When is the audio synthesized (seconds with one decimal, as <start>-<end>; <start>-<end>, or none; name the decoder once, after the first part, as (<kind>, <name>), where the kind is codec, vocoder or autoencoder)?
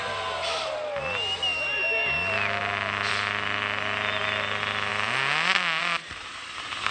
none